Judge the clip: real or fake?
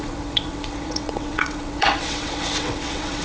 fake